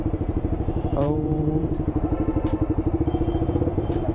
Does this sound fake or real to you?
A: fake